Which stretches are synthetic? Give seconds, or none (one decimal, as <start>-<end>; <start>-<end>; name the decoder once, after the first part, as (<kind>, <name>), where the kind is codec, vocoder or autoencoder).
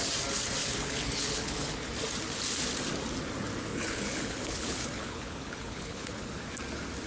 0.6-1.9 (codec, HILCodec); 3.7-6.3